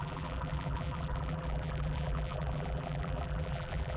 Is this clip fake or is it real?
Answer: fake